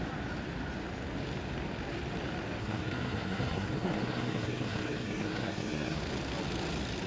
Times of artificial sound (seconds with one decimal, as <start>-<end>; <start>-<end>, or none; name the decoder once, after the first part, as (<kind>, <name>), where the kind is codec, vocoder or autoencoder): 2.6-6.0 (codec, SNAC)